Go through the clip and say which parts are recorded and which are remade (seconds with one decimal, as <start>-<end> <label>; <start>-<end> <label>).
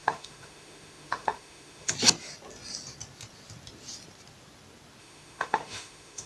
0.0-1.9 remade; 1.9-5.0 recorded; 5.0-6.3 remade